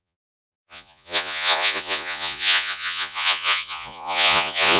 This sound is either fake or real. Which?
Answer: fake